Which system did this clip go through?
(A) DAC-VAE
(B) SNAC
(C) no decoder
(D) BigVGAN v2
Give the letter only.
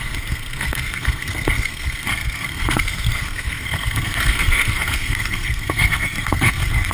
B